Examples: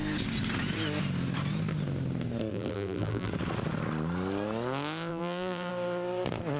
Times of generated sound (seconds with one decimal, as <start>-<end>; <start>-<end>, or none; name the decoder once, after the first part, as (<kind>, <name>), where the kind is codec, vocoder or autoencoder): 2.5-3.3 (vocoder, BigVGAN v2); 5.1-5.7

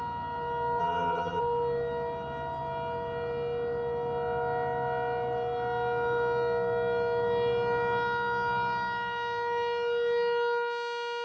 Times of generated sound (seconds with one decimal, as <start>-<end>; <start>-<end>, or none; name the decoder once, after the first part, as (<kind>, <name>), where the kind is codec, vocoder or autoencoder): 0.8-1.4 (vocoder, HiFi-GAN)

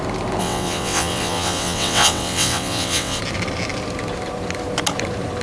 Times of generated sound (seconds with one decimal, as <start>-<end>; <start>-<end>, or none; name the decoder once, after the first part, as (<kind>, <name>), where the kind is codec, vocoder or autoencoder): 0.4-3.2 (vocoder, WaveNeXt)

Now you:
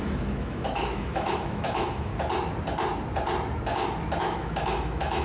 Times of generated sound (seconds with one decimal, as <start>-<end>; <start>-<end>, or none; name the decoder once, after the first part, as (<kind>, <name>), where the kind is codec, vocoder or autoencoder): 0.0-2.1 (autoencoder, DAC-VAE); 4.2-5.2

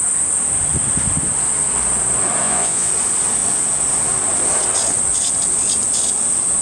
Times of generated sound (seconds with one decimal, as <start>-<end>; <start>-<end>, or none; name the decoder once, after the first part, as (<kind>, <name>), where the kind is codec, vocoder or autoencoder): 2.4-2.9 (vocoder, Vocos)